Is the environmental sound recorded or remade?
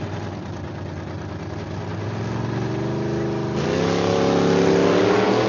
recorded